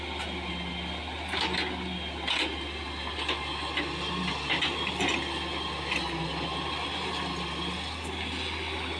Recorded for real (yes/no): yes